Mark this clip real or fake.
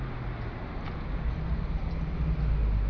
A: real